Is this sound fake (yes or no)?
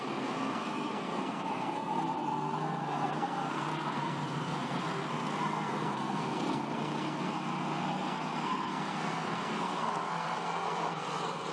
yes